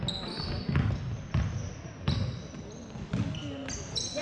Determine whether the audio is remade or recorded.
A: recorded